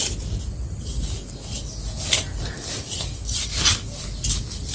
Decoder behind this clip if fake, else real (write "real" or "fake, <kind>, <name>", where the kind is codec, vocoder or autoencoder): real